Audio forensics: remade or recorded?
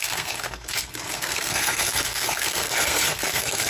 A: remade